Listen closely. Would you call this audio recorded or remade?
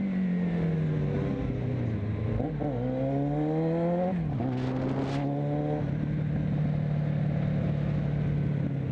recorded